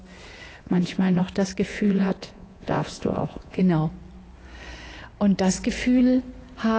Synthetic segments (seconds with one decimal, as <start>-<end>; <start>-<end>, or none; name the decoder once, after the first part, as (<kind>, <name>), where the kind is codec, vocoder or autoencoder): 0.6-1.2 (vocoder, Vocos); 1.7-3.6